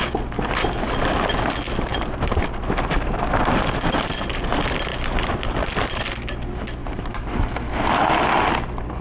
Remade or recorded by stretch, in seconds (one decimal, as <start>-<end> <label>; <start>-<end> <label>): 0.0-1.9 recorded; 1.9-2.6 remade; 2.6-6.8 recorded; 6.8-7.3 remade; 7.3-9.0 recorded